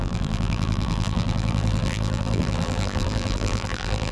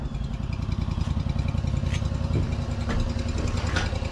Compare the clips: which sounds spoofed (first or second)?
first